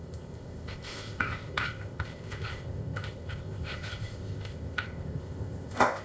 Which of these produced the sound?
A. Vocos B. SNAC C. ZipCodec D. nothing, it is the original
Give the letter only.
C